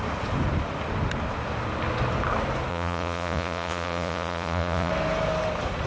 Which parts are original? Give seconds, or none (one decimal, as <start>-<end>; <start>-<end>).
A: 0.0-2.7; 4.9-5.9